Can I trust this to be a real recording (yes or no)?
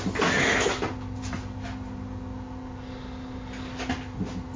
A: yes